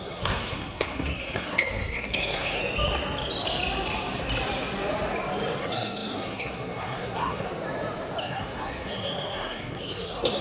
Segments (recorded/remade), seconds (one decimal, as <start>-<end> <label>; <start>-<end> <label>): 0.0-2.6 remade; 2.6-5.6 recorded; 5.6-7.5 remade; 7.5-8.2 recorded; 8.2-10.4 remade